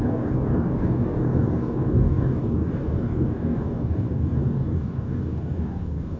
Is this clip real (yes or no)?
no